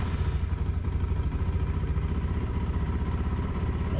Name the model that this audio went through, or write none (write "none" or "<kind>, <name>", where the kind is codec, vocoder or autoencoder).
none